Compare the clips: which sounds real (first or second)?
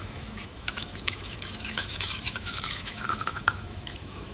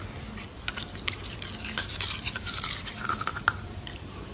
second